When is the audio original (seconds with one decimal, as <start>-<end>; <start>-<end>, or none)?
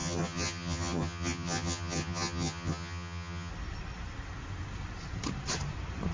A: 3.5-6.1